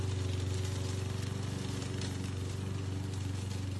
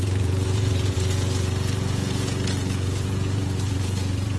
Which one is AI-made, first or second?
second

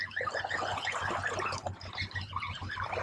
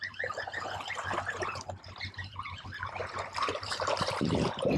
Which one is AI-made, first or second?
second